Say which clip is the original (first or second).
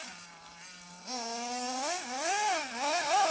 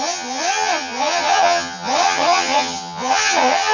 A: first